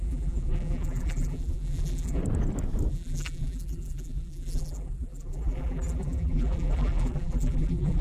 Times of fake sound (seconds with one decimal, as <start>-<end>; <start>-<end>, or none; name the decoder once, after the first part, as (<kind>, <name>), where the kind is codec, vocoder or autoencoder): 0.0-2.2 (vocoder, BigVGAN v2); 2.9-8.0